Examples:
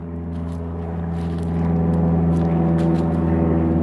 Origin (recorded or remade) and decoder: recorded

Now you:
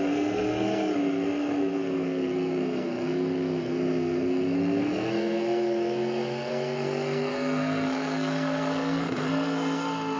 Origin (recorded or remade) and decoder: remade, codec, SNAC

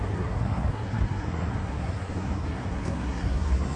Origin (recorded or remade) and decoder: remade, codec, SNAC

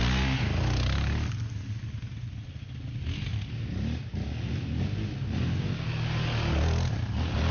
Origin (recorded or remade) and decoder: recorded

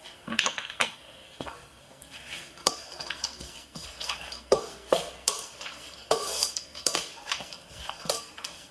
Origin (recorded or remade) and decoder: remade, codec, SNAC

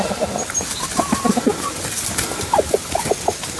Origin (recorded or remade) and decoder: recorded